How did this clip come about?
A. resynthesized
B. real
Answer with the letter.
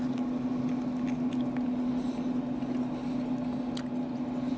B